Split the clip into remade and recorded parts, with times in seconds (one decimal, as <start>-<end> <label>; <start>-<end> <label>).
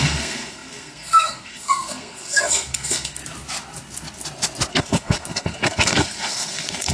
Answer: 0.0-3.2 remade; 3.2-4.7 recorded; 4.7-6.9 remade